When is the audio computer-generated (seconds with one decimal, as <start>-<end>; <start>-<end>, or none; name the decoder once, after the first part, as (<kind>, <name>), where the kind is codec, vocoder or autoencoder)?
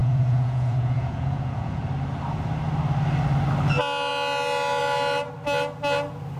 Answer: 0.0-1.8 (vocoder, Vocos)